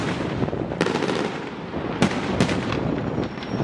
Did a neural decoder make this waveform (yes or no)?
yes